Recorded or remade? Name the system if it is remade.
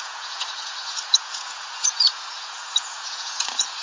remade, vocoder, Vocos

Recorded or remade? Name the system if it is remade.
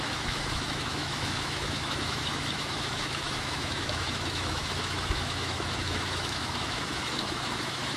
remade, autoencoder, DAC-VAE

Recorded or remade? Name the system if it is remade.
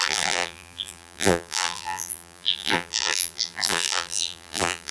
remade, vocoder, BigVGAN v2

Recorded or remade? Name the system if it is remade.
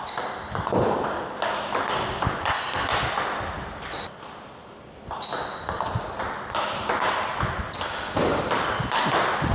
recorded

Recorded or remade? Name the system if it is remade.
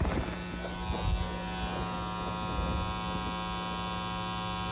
recorded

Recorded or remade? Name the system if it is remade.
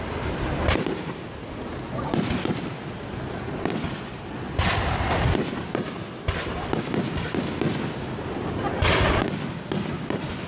recorded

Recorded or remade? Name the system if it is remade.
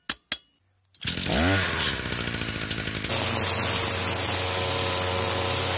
recorded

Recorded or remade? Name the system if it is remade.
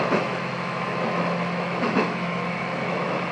remade, autoencoder, DAC-VAE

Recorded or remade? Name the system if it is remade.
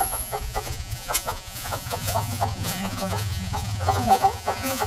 remade, vocoder, Vocos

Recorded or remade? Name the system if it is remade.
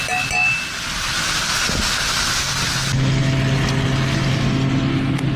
recorded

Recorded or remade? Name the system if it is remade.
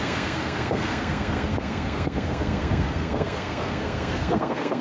remade, codec, SNAC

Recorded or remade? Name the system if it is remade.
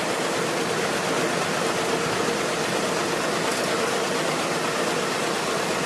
recorded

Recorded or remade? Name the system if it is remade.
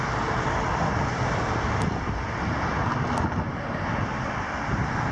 recorded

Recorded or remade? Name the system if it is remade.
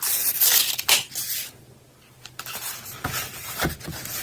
recorded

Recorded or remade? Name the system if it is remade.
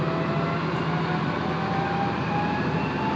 recorded